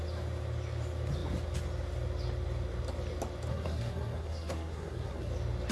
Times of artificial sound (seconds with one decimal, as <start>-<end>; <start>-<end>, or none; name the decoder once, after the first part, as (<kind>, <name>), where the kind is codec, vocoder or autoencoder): 3.5-5.3 (codec, SNAC)